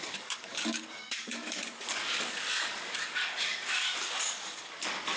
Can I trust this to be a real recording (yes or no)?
no